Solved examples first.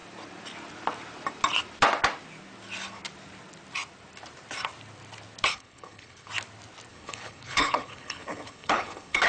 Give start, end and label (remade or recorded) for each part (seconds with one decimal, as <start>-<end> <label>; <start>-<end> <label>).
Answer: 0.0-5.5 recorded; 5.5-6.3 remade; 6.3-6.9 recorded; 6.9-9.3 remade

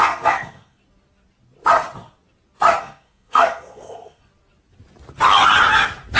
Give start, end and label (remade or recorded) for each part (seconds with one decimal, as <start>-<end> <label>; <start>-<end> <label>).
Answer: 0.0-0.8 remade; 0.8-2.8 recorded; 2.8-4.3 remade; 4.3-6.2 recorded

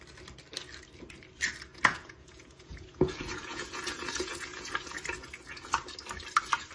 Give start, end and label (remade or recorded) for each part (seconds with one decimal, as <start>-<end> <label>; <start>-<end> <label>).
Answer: 0.0-1.7 recorded; 1.7-5.7 remade; 5.7-6.7 recorded

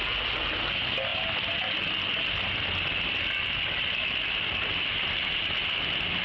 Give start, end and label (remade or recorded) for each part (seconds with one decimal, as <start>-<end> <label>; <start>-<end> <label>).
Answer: 0.0-6.2 recorded

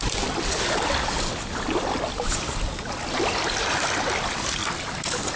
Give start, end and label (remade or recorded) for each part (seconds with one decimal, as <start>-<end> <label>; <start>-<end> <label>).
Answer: 0.0-5.4 recorded

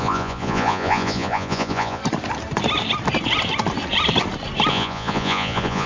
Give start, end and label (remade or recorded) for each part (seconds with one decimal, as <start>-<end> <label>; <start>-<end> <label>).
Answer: 0.0-2.0 remade; 2.0-4.7 recorded; 4.7-5.9 remade